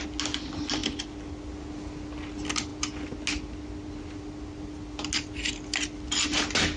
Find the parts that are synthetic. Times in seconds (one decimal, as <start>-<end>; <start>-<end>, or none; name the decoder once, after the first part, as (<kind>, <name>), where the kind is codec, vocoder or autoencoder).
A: none